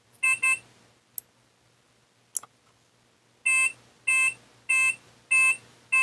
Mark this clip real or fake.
real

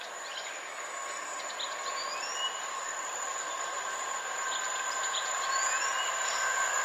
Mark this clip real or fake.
real